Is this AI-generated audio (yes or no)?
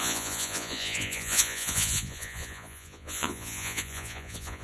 yes